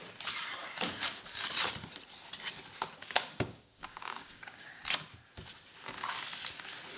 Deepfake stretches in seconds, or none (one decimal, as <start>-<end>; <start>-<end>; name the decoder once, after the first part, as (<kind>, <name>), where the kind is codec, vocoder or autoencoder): 3.0-4.8 (codec, DAC)